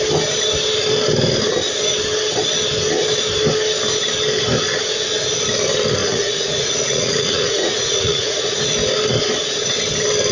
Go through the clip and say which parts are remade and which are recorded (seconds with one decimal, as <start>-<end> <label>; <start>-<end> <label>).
0.0-6.0 recorded; 6.0-8.6 remade; 8.6-10.3 recorded